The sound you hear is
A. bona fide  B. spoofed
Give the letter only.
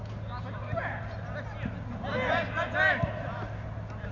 A